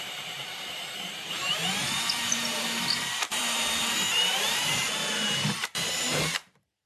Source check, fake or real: fake